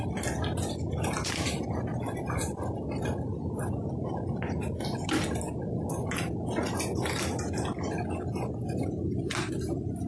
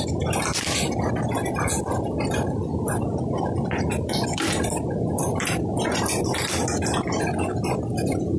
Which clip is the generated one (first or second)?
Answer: second